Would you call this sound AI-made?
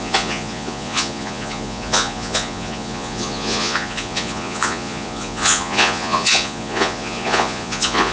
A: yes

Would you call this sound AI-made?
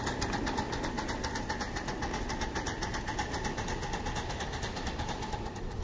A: no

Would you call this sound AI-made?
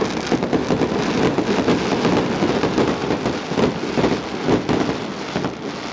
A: no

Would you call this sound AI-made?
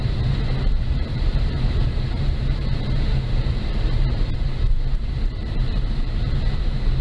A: yes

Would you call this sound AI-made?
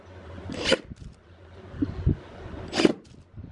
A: no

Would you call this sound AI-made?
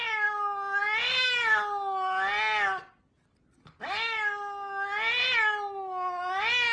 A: no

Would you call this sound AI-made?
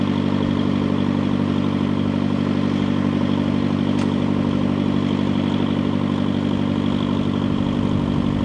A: no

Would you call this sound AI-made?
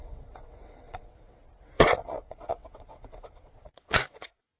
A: yes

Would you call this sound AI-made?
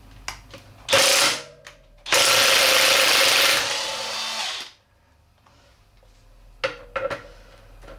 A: no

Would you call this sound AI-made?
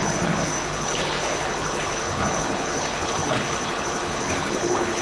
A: yes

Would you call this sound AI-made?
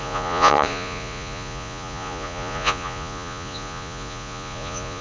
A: yes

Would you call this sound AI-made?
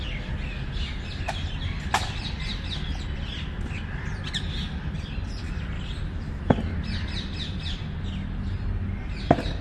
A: no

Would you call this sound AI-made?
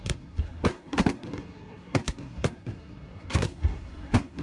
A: yes